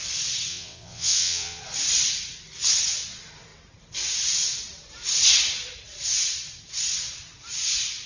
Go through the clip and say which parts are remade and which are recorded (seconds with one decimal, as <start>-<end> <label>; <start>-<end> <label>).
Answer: 0.0-0.5 recorded; 0.5-1.6 remade; 1.6-8.1 recorded

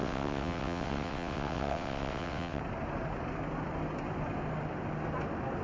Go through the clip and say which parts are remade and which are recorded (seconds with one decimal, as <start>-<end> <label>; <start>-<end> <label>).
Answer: 0.0-2.6 remade; 2.6-5.6 recorded

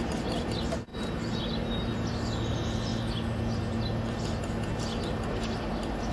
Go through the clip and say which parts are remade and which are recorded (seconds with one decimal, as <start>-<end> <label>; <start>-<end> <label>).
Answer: 0.0-6.1 recorded

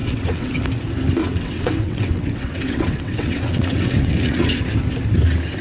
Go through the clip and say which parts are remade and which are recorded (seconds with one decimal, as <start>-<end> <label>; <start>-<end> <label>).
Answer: 0.0-0.6 remade; 0.6-1.2 recorded; 1.2-4.6 remade; 4.6-5.6 recorded

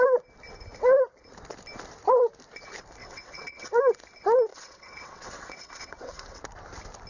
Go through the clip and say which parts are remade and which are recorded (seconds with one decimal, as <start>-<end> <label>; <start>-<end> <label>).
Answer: 0.0-3.0 recorded; 3.0-3.7 remade; 3.7-4.5 recorded; 4.5-6.4 remade; 6.4-7.1 recorded